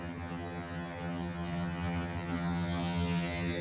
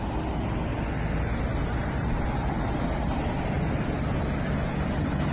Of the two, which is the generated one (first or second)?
first